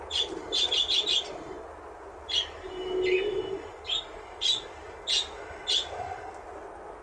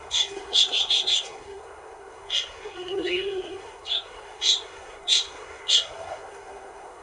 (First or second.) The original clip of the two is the first